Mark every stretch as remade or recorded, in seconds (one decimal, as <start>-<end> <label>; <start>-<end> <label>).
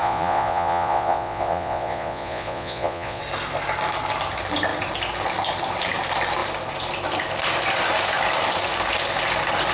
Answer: 0.0-3.2 remade; 3.2-9.7 recorded